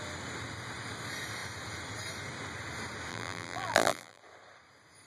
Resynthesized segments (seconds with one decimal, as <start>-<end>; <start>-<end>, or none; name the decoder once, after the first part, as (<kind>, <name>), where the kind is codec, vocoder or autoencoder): 3.1-4.2 (vocoder, BigVGAN v2)